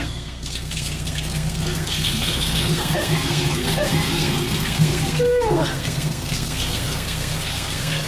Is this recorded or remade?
remade